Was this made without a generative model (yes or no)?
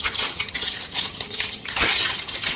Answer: no